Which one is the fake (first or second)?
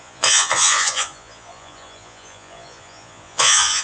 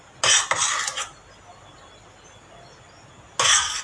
first